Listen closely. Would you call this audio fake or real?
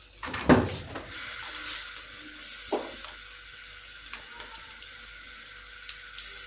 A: real